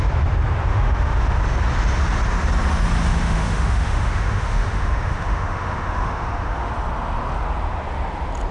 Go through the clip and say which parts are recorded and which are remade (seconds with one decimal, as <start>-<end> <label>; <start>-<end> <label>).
0.0-0.7 recorded; 0.7-1.4 remade; 1.4-3.1 recorded; 3.1-6.7 remade; 6.7-8.5 recorded